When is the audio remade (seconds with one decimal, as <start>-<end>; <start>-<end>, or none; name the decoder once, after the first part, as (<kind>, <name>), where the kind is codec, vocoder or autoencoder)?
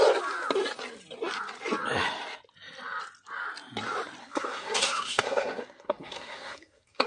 4.2-7.1 (codec, SNAC)